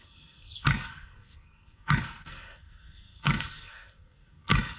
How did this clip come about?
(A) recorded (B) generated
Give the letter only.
B